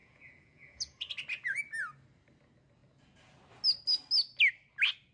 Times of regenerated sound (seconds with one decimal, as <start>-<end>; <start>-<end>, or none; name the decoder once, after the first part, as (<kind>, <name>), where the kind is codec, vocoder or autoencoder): 0.0-1.1 (vocoder, Vocos)